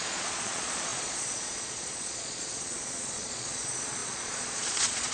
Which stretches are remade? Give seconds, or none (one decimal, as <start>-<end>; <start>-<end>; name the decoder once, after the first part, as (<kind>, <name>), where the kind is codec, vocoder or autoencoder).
0.0-5.1 (vocoder, Vocos)